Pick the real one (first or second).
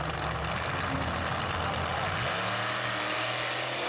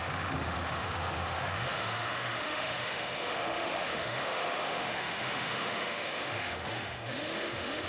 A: first